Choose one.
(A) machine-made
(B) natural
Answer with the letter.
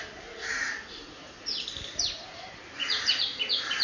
A